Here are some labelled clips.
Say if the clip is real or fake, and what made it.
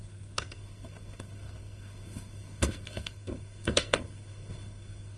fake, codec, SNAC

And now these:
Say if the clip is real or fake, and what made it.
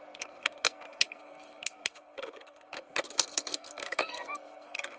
fake, codec, SNAC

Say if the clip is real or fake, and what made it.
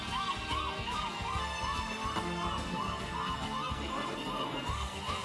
fake, codec, SNAC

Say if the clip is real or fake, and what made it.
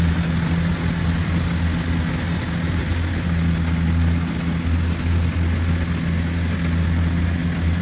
real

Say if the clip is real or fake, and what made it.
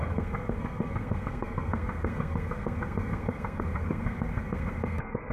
fake, codec, SNAC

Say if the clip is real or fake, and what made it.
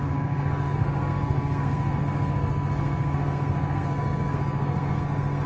fake, codec, SNAC